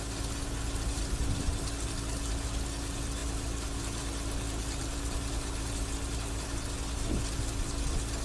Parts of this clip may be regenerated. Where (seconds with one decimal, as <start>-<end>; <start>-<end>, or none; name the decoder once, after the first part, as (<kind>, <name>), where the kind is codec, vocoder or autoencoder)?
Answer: none